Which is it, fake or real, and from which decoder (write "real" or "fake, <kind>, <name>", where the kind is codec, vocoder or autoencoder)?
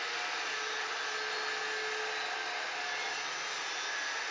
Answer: real